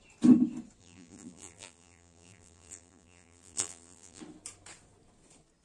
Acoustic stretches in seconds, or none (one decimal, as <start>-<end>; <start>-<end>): 0.0-0.8; 4.2-5.6